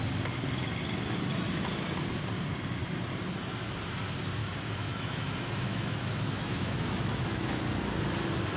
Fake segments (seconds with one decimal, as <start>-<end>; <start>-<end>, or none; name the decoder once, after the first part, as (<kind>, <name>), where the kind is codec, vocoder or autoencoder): 4.4-7.6 (autoencoder, DAC-VAE)